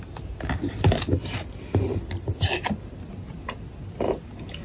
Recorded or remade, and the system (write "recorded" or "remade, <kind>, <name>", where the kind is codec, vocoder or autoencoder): recorded